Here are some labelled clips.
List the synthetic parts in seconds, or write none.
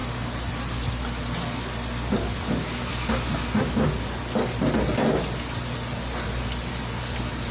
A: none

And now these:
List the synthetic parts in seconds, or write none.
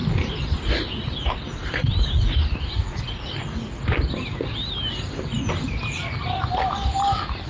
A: 0.0-0.7 (vocoder, BigVGAN v2)